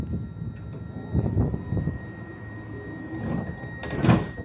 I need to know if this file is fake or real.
real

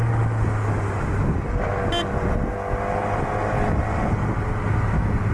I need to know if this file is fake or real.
real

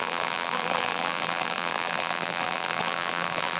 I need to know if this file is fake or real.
fake